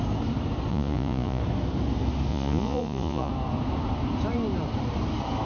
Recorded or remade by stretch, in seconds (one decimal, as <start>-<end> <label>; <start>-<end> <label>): 0.0-0.7 recorded; 0.7-1.4 remade; 1.4-2.3 recorded; 2.3-3.3 remade; 3.3-5.5 recorded